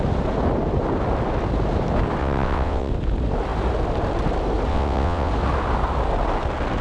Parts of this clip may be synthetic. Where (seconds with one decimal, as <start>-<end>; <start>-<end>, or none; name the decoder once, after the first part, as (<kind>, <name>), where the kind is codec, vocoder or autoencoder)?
2.2-2.9 (vocoder, WaveNeXt); 4.7-5.3

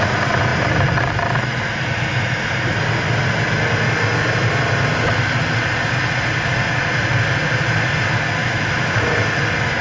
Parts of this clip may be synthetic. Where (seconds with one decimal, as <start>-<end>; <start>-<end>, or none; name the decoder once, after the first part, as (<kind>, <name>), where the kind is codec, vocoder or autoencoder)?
8.4-9.0 (autoencoder, DAC-VAE)

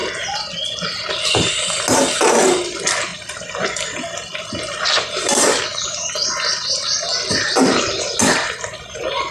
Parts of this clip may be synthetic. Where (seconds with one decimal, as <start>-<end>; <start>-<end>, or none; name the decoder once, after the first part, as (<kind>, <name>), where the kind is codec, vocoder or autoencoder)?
2.4-9.3 (vocoder, BigVGAN v2)

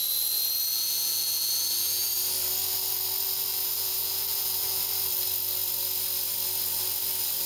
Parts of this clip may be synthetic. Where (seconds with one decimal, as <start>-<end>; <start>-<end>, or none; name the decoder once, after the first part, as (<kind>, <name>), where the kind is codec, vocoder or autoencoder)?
0.7-2.0 (vocoder, Vocos); 3.5-4.8

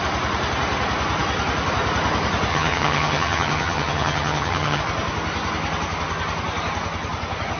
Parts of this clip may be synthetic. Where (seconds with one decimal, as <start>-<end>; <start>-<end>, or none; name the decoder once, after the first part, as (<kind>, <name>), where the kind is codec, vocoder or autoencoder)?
2.5-4.8 (vocoder, HiFi-GAN)